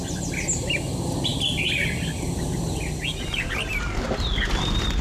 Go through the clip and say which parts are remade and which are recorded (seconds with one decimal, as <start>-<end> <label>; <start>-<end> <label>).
0.0-5.0 recorded